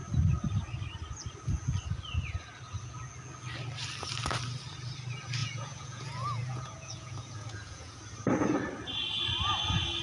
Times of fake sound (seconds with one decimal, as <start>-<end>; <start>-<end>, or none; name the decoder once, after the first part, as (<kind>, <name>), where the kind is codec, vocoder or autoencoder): 5.4-8.0 (vocoder, Vocos)